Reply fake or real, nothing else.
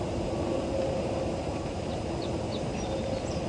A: fake